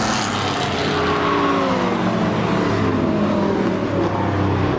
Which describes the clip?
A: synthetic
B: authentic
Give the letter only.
B